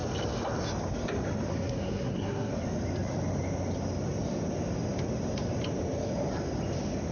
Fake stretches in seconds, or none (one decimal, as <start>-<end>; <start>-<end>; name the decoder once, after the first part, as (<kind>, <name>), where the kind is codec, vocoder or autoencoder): 1.5-2.5 (codec, SNAC)